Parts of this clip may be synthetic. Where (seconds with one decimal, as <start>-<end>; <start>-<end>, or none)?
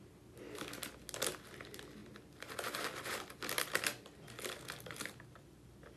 none